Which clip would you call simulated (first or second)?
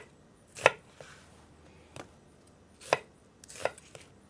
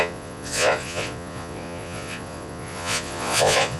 second